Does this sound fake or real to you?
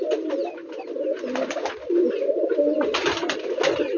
real